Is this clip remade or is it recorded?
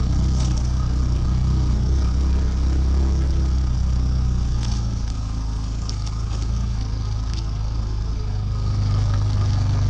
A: remade